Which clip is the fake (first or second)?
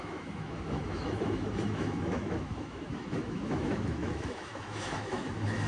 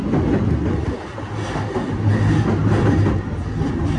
first